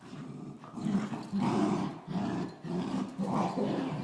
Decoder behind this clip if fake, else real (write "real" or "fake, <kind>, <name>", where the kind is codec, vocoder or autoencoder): fake, vocoder, BigVGAN v2